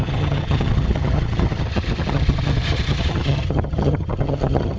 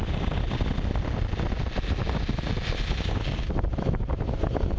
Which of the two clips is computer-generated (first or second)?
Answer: first